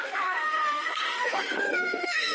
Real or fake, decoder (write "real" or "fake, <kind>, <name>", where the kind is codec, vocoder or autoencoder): fake, autoencoder, DAC-VAE